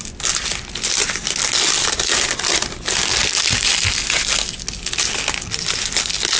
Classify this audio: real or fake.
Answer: real